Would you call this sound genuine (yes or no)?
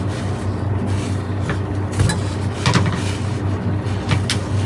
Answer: yes